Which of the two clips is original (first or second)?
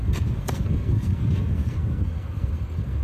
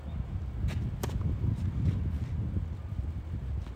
second